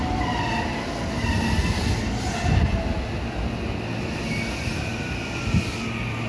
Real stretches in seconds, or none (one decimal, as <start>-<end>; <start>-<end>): 0.0-6.3